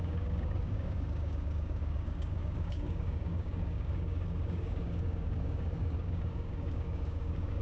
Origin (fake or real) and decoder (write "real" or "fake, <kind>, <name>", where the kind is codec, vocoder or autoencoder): fake, codec, DAC